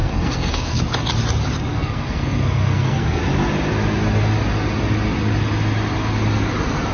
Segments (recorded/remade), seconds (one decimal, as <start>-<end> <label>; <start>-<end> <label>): 0.0-0.8 remade; 0.8-1.7 recorded; 1.7-3.2 remade; 3.2-6.9 recorded

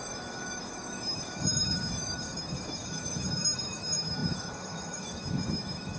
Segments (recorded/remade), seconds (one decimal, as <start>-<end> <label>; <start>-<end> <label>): 0.0-6.0 remade